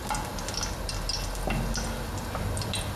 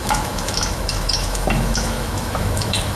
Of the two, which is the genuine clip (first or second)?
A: first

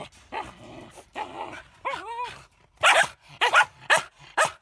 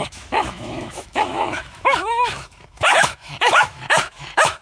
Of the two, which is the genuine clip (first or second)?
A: first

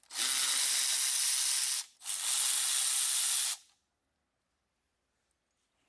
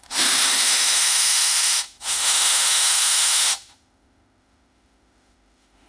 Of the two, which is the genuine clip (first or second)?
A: first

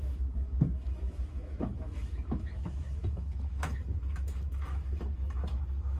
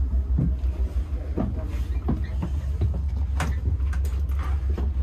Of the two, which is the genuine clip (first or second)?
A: second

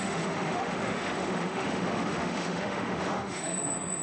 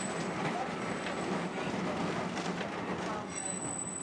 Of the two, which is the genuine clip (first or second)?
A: second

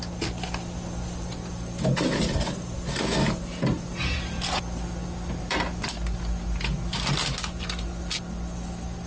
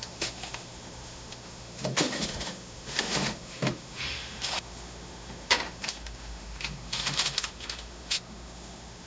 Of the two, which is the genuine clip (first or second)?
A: first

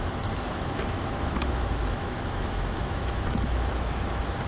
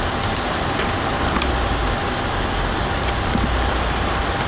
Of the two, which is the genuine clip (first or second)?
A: second